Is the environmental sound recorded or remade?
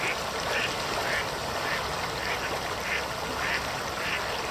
recorded